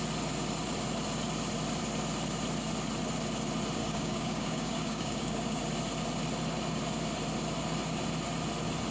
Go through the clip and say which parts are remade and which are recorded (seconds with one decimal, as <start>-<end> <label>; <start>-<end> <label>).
0.0-3.8 recorded; 3.8-5.6 remade; 5.6-8.9 recorded